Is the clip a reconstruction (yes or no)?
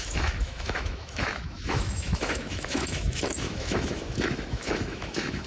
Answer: yes